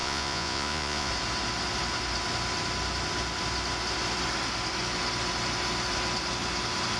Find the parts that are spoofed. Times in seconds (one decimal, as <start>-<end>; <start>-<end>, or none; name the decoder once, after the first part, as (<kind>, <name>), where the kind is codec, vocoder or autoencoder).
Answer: 0.0-1.1 (vocoder, Vocos)